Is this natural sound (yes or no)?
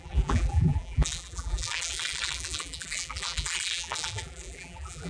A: no